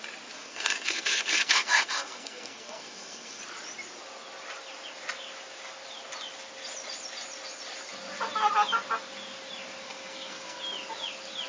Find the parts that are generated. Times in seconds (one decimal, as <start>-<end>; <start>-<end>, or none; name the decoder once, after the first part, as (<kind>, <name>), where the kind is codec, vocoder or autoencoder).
0.4-3.4 (codec, SNAC); 9.8-10.6